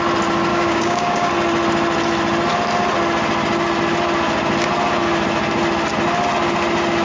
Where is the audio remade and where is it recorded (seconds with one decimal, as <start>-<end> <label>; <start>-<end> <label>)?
0.0-0.5 recorded; 0.5-1.3 remade; 1.3-7.0 recorded